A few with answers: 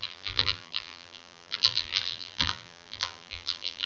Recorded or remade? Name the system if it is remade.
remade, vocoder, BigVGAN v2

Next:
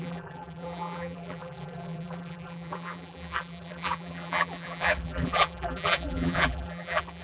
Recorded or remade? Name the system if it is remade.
remade, vocoder, BigVGAN v2